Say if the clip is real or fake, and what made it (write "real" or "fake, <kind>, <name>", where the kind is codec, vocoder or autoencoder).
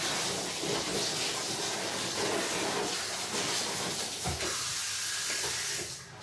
real